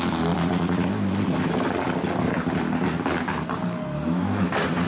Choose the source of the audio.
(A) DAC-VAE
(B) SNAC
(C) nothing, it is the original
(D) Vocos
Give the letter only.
C